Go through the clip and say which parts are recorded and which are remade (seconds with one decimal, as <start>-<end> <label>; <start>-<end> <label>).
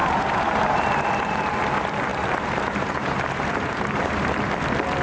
0.0-1.4 remade; 1.4-2.1 recorded; 2.1-4.5 remade; 4.5-5.0 recorded